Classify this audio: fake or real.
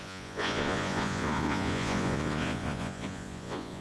fake